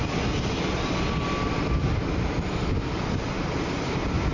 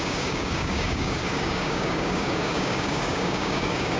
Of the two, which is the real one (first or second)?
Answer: first